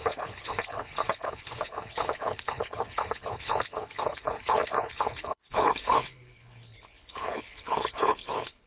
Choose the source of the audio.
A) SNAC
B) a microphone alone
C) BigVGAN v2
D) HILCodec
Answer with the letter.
D